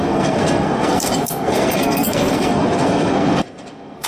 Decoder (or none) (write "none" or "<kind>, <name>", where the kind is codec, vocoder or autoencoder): codec, SNAC